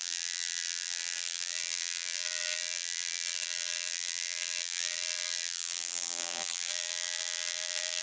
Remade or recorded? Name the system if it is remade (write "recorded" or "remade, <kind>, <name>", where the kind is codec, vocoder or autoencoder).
remade, vocoder, BigVGAN v2